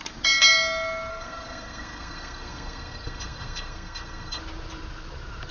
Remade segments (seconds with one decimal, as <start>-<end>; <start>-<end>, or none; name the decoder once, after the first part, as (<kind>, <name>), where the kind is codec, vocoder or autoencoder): 1.1-4.4 (codec, SNAC)